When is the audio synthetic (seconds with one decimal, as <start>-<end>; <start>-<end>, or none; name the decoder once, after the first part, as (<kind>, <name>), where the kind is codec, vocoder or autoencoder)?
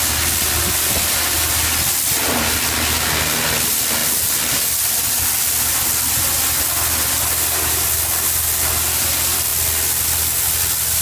none